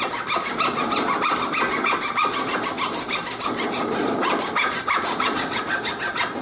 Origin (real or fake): real